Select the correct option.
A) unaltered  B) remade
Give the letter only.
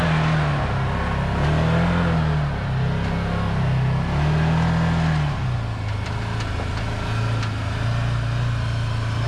A